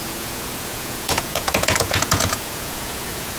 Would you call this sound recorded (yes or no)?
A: no